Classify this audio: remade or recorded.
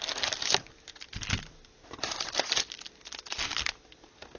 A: recorded